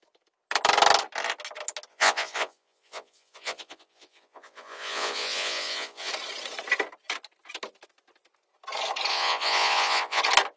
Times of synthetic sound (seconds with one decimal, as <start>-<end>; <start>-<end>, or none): 1.9-6.1; 9.1-10.2